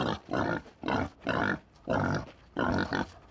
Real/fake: real